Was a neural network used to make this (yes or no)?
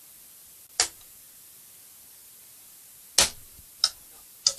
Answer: no